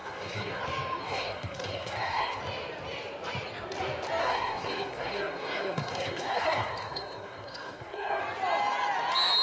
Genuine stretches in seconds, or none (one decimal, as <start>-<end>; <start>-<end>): 0.6-1.0; 2.4-4.2; 8.2-9.4